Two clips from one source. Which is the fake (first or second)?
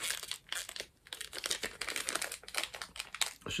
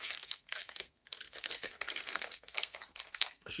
second